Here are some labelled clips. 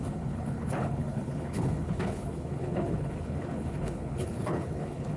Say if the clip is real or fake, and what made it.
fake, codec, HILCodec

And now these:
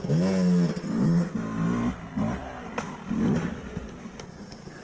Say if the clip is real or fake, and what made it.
real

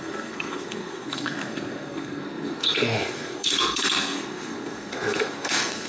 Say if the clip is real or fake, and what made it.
fake, codec, SNAC